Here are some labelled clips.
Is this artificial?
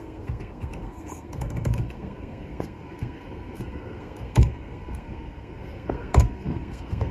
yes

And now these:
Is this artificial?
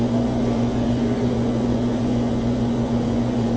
yes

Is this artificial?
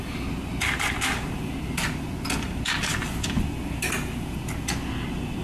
no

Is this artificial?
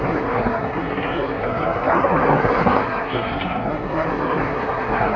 yes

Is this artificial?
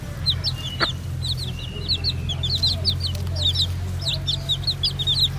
no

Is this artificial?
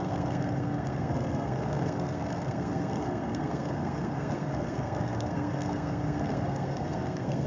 yes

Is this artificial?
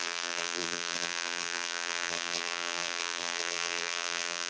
yes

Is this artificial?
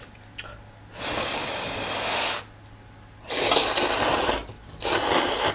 no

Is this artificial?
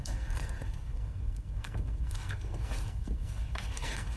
yes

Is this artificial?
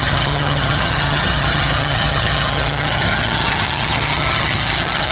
yes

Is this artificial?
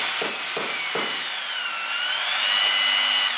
no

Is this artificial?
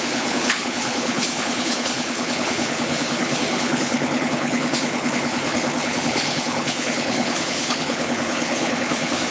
yes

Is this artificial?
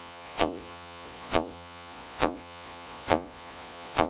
yes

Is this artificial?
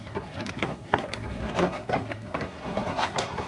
yes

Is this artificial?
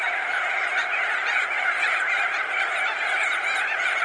no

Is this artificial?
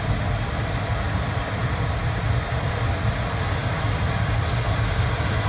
yes